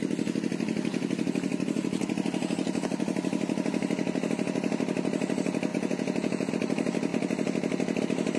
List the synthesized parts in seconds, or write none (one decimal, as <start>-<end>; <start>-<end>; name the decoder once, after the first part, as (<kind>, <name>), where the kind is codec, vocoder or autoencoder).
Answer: 5.7-6.5 (vocoder, Vocos)